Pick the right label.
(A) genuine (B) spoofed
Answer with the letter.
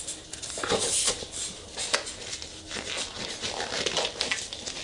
A